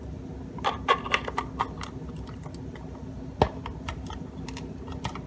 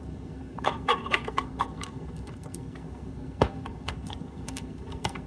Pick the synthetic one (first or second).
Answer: second